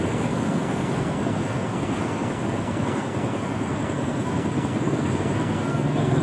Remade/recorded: remade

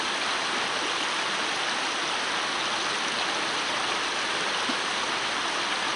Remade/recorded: recorded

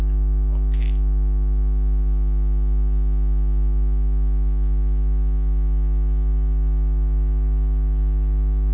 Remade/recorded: recorded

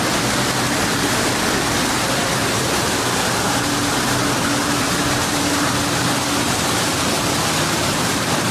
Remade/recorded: recorded